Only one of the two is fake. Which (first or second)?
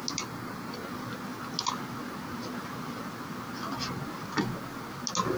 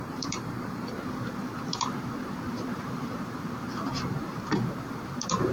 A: second